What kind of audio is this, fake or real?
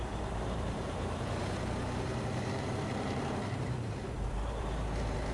fake